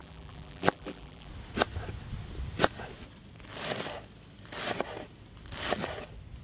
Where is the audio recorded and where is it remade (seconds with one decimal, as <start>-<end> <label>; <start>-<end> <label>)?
0.0-1.3 remade; 1.3-6.4 recorded